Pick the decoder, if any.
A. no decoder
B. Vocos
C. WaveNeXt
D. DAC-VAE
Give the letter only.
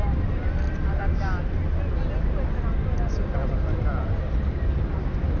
A